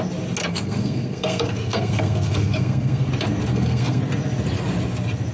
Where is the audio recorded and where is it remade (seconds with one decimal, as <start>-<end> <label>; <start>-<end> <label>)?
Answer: 0.0-0.4 recorded; 0.4-3.1 remade; 3.1-3.5 recorded; 3.5-4.0 remade; 4.0-5.3 recorded

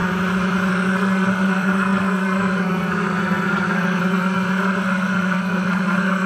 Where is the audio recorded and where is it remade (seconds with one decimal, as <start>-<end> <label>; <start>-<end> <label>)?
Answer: 0.0-0.7 recorded; 0.7-6.3 remade

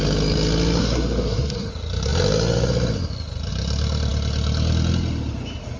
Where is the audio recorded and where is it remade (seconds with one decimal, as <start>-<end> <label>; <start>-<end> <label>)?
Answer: 0.0-0.8 recorded; 0.8-1.7 remade; 1.7-5.8 recorded

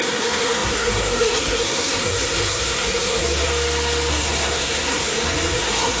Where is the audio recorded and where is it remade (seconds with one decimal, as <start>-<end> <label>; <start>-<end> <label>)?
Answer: 0.0-3.5 remade; 3.5-4.1 recorded; 4.1-6.0 remade

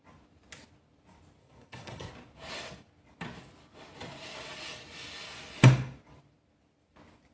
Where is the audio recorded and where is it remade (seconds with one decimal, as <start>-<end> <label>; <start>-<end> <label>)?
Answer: 0.0-1.4 recorded; 1.4-2.1 remade; 2.1-7.3 recorded